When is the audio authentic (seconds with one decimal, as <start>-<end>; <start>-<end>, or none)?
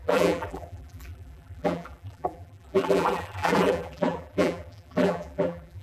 none